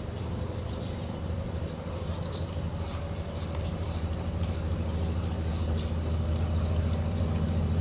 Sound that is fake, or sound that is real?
fake